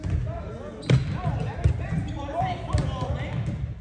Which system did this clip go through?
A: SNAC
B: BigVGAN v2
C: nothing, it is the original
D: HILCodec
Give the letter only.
C